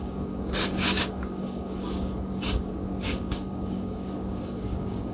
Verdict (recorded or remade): remade